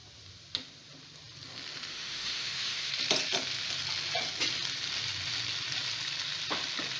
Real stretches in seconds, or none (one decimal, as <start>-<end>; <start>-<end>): 0.0-1.9; 2.9-7.0